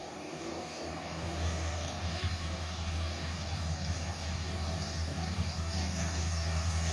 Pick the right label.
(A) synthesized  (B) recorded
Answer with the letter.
A